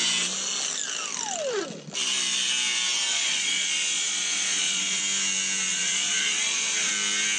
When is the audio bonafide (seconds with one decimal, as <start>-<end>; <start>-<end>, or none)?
0.0-3.1; 5.0-5.7; 6.9-7.4